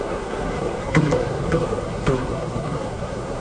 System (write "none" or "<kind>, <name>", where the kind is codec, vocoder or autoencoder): codec, SNAC